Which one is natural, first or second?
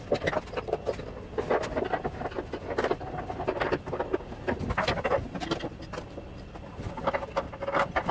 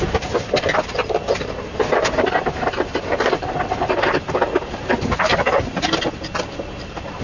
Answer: first